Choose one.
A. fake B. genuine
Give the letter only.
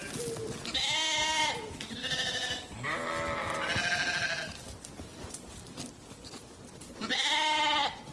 B